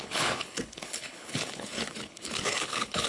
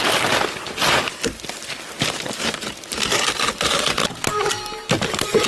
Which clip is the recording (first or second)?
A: second